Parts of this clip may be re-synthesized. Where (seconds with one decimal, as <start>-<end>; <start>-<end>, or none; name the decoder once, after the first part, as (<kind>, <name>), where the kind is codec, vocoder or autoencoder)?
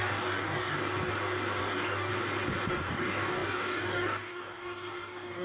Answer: 0.0-0.8 (codec, DAC); 1.6-2.1; 2.7-5.4